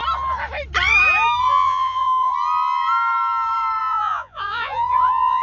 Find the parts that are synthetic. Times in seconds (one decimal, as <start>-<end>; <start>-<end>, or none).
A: 1.4-2.3; 3.8-5.4